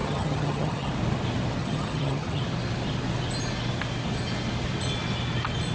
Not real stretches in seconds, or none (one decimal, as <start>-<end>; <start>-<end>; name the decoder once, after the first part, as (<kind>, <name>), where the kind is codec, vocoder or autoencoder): 0.0-0.9 (vocoder, HiFi-GAN); 1.6-2.4